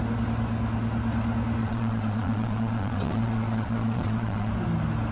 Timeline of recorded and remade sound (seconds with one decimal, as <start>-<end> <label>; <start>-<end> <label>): 0.0-1.6 recorded; 1.6-4.5 remade; 4.5-5.1 recorded

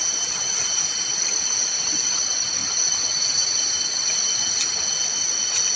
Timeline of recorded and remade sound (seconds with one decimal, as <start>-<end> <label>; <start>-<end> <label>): 0.0-5.8 recorded